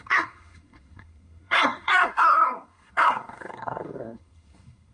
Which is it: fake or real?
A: fake